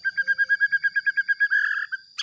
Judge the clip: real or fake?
real